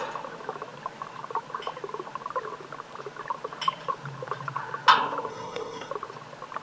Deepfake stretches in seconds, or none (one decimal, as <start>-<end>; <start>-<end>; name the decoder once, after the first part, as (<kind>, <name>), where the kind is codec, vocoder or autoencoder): 5.3-5.9 (codec, SNAC)